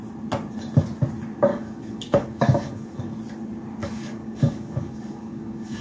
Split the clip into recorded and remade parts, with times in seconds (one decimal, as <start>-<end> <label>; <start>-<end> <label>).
0.0-1.5 recorded; 1.5-3.2 remade; 3.2-3.8 recorded; 3.8-5.8 remade